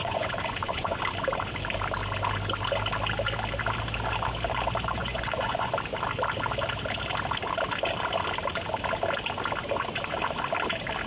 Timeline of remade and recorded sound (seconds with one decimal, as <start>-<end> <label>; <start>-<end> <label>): 0.0-1.0 remade; 1.0-5.0 recorded; 5.0-5.7 remade; 5.7-11.1 recorded